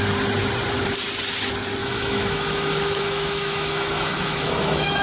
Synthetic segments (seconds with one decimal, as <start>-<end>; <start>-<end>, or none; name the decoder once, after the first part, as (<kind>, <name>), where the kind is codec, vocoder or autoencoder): 1.8-5.0 (autoencoder, DAC-VAE)